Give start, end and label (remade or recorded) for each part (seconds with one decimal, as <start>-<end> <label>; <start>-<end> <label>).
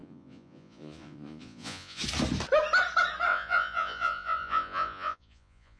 0.0-2.0 remade; 2.0-3.3 recorded; 3.3-5.8 remade